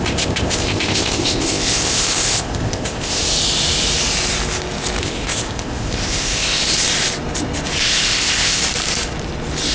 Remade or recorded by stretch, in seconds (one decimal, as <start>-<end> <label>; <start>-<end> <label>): 0.0-3.2 remade; 3.2-5.0 recorded; 5.0-6.6 remade; 6.6-7.8 recorded; 7.8-8.6 remade; 8.6-9.7 recorded

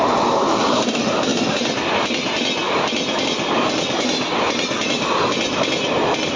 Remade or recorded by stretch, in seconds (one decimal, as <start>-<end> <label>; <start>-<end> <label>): 0.0-6.4 recorded

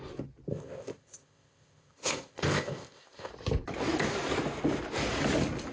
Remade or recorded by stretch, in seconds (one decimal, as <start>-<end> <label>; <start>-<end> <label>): 0.0-0.5 recorded; 0.5-3.3 remade; 3.3-5.7 recorded